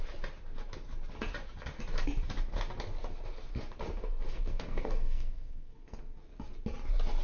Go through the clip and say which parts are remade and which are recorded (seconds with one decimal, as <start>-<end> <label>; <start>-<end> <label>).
0.0-4.3 recorded; 4.3-6.0 remade; 6.0-7.2 recorded